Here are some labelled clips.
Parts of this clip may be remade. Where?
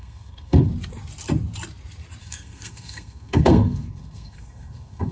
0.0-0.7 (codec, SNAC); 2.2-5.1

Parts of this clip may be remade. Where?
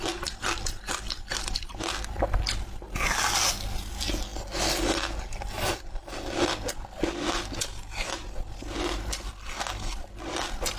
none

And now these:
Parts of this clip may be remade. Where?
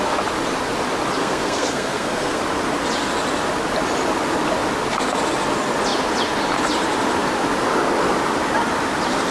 1.2-2.4 (codec, SNAC)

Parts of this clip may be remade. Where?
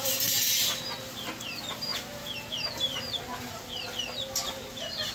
none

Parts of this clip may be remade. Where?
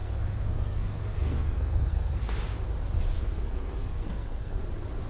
0.0-2.3 (codec, SNAC); 3.1-4.6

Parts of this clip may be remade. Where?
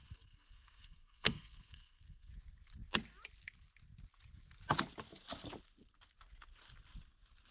0.0-2.3 (codec, SNAC)